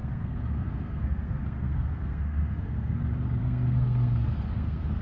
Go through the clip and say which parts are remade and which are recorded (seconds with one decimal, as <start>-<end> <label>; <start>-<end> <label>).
0.0-3.0 remade; 3.0-3.4 recorded; 3.4-5.0 remade